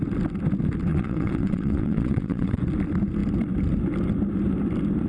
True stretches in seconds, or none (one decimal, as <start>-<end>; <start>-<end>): 0.0-0.9; 2.6-5.1